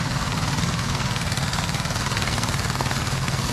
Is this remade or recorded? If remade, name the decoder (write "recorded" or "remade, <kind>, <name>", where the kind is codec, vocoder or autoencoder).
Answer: remade, codec, SNAC